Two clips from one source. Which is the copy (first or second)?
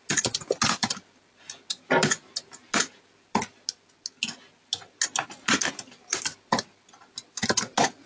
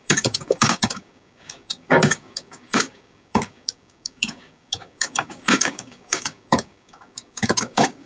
second